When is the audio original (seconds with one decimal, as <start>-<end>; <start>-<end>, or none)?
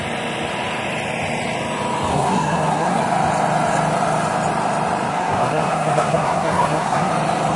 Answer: 0.0-2.1; 3.0-5.1; 7.1-7.6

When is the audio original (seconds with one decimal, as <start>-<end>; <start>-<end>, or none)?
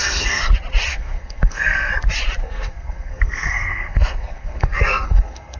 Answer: 0.5-0.9; 1.9-2.4